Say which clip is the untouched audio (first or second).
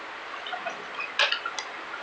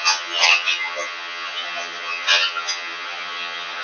first